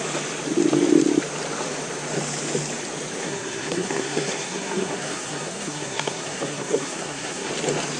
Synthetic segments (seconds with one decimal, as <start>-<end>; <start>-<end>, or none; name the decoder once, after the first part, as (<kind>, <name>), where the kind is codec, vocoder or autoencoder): 3.2-7.5 (codec, SNAC)